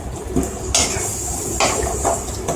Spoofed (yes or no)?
no